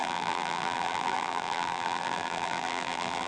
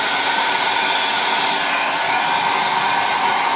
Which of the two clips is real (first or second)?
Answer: second